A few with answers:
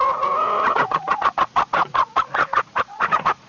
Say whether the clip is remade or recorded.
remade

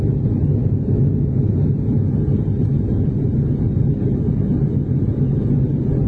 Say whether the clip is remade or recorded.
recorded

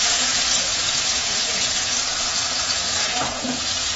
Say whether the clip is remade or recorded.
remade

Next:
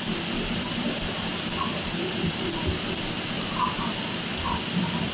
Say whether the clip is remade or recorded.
recorded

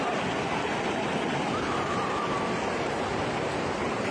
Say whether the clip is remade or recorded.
recorded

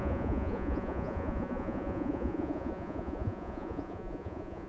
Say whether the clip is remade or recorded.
remade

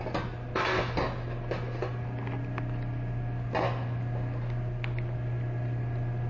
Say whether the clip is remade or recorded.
recorded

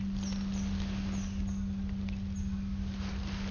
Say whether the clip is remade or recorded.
recorded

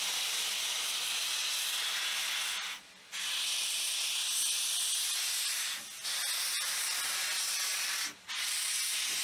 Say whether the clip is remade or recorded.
recorded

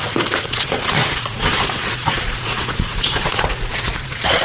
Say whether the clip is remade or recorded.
remade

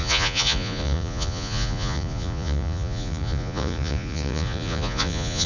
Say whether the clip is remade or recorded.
remade